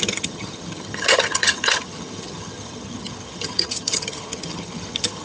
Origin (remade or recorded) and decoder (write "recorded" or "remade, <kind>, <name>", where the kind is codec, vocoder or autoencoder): remade, vocoder, HiFi-GAN